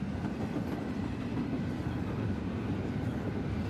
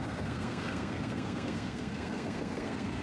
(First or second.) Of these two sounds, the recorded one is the first